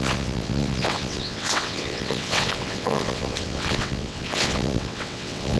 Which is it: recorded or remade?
remade